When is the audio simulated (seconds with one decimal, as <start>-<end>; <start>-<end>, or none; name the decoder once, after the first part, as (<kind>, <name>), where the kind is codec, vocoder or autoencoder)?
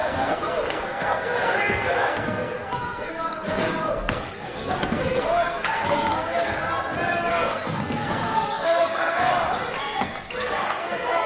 0.0-6.6 (codec, SNAC); 7.3-9.3; 9.8-11.3